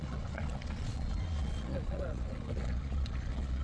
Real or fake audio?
fake